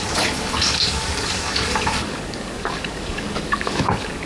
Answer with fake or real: fake